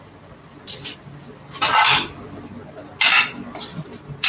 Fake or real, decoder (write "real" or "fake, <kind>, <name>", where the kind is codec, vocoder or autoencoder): real